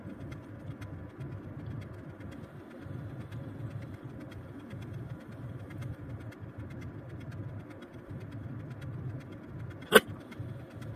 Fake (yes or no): no